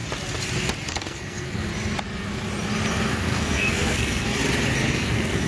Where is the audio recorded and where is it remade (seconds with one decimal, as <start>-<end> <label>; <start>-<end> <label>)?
0.0-0.9 recorded; 0.9-1.7 remade; 1.7-2.9 recorded; 2.9-4.4 remade; 4.4-4.9 recorded; 4.9-5.5 remade